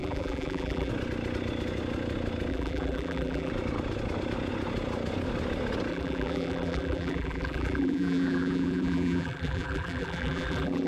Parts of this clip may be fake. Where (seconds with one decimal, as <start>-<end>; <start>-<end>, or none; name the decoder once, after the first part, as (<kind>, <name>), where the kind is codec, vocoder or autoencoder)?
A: 0.0-0.9 (vocoder, BigVGAN v2); 2.5-3.5; 5.9-10.9